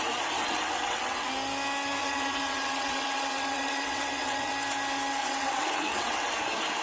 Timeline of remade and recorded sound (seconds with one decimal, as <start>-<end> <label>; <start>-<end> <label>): 0.0-0.4 recorded; 0.4-1.3 remade; 1.3-2.0 recorded; 2.0-4.5 remade; 4.5-5.2 recorded; 5.2-6.3 remade; 6.3-6.8 recorded